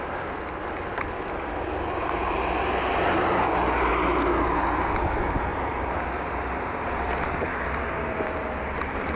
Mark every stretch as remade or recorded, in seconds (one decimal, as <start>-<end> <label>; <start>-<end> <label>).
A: 0.0-0.9 recorded; 0.9-3.9 remade; 3.9-5.5 recorded; 5.5-8.4 remade; 8.4-9.2 recorded